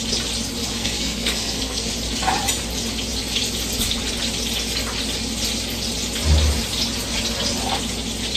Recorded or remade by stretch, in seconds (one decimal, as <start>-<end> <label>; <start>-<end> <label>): 0.0-0.6 recorded; 0.6-1.9 remade; 1.9-8.4 recorded